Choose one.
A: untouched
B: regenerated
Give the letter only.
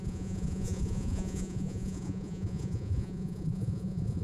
B